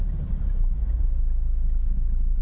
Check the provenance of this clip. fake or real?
real